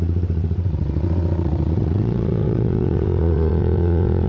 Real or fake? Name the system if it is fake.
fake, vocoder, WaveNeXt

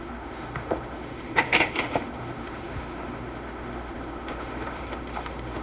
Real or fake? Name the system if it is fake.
fake, autoencoder, DAC-VAE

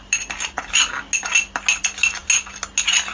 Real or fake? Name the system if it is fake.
real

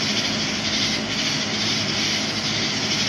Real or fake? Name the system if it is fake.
real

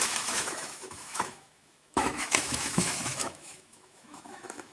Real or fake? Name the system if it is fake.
fake, autoencoder, DAC-VAE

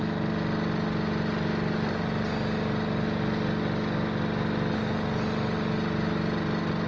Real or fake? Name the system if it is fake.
real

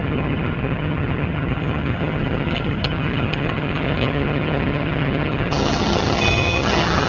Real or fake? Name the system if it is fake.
fake, vocoder, HiFi-GAN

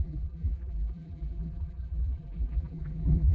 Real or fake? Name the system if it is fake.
fake, vocoder, BigVGAN v2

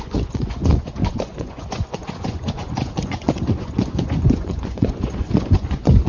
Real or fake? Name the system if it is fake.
fake, vocoder, Vocos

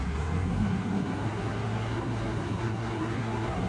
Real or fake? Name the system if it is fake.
fake, codec, SNAC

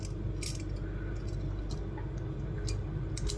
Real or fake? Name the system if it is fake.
real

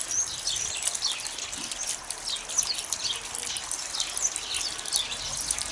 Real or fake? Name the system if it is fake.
real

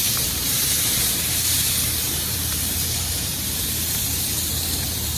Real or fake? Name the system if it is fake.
fake, vocoder, BigVGAN v2